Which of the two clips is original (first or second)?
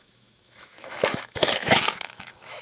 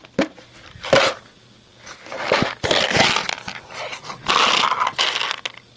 second